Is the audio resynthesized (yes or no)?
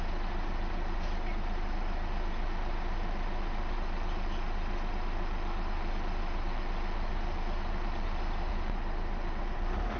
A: yes